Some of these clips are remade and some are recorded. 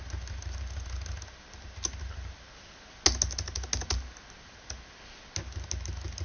recorded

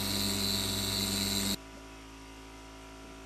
recorded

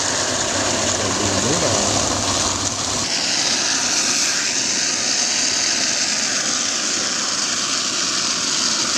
recorded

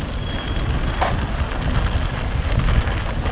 recorded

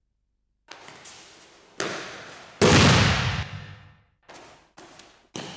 recorded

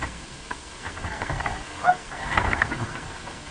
remade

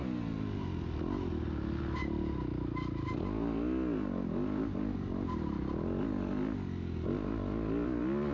recorded